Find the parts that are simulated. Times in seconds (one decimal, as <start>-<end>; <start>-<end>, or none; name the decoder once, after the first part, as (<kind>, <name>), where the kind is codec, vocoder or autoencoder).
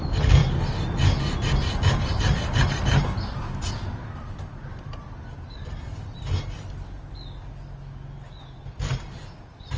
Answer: none